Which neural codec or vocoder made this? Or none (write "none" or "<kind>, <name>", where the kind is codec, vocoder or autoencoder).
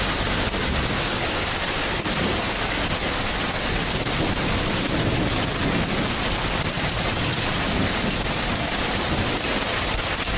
none